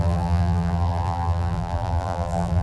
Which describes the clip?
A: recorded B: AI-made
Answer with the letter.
B